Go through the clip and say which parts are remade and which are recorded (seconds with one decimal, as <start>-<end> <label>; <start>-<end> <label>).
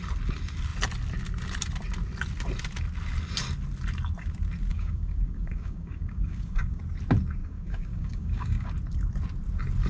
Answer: 0.0-4.7 recorded; 4.7-6.8 remade; 6.8-7.4 recorded; 7.4-8.7 remade; 8.7-9.9 recorded